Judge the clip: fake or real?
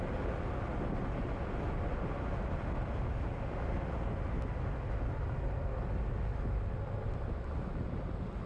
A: real